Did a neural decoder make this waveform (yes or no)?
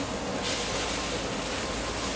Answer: no